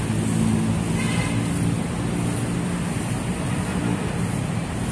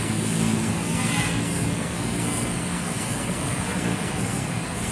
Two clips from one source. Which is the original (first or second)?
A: first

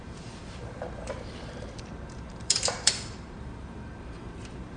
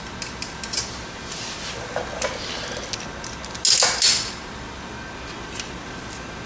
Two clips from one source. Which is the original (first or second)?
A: second